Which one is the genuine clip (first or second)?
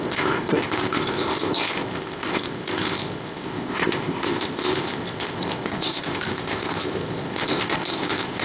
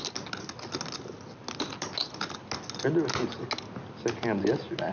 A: second